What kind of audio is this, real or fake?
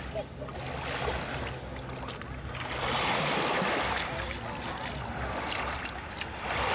real